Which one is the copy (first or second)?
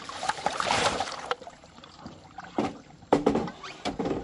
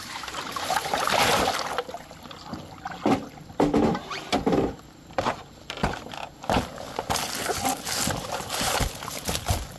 first